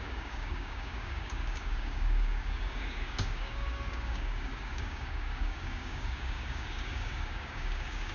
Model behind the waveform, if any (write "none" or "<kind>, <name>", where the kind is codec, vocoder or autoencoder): codec, DAC